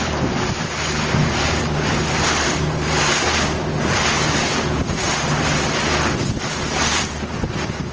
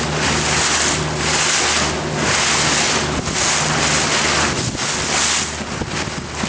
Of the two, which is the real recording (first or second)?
second